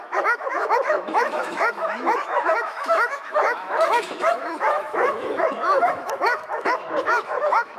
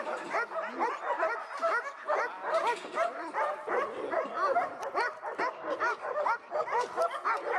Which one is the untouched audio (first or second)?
second